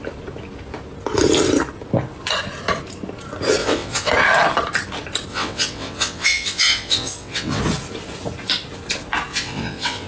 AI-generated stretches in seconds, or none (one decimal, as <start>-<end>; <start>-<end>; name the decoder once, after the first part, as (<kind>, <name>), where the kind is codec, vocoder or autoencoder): 3.6-4.1 (vocoder, WaveNeXt); 5.3-7.6; 9.3-10.1